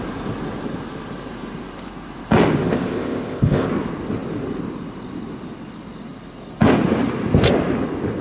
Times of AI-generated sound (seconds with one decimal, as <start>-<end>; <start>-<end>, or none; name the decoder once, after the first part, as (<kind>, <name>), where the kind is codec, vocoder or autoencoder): 2.6-3.7 (codec, ZipCodec)